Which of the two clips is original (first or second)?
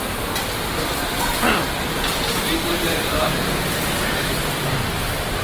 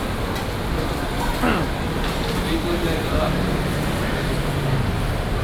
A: second